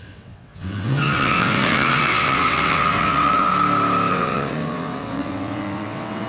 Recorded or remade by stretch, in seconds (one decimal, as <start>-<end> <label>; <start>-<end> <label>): 0.0-3.5 remade; 3.5-4.1 recorded; 4.1-6.3 remade